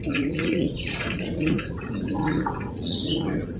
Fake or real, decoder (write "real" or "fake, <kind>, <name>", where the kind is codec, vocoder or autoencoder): fake, vocoder, Vocos